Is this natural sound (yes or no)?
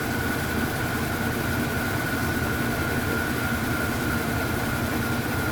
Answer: no